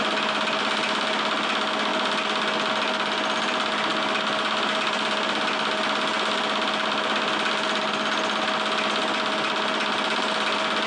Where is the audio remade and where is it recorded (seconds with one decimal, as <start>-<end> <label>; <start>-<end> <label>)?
0.0-10.9 recorded